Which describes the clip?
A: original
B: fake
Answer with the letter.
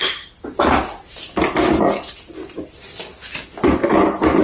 A